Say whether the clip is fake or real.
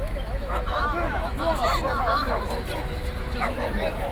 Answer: fake